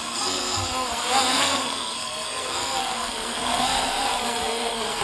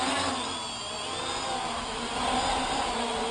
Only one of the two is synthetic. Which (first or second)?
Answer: first